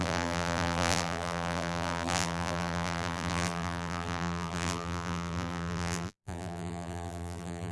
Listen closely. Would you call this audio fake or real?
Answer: fake